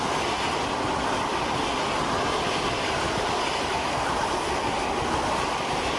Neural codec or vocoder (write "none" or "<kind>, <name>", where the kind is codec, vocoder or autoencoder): none